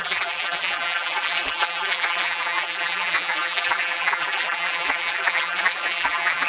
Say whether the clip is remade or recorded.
remade